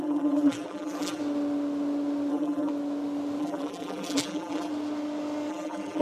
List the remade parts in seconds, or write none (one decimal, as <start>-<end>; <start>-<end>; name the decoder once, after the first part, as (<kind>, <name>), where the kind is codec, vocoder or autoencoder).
0.0-1.2 (vocoder, BigVGAN v2); 2.3-2.7; 3.4-4.7; 5.5-6.0